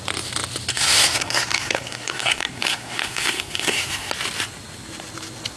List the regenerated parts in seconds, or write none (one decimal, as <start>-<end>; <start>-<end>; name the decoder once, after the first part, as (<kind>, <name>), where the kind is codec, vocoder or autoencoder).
0.7-4.1 (codec, SNAC)